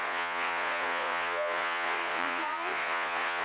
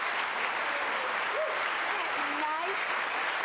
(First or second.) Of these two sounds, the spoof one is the first